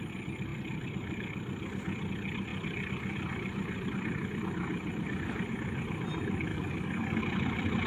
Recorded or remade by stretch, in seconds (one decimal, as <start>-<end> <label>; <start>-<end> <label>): 0.0-6.5 recorded; 6.5-7.2 remade; 7.2-7.9 recorded